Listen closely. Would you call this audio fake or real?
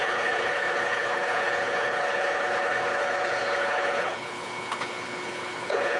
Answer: fake